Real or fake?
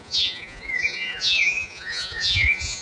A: fake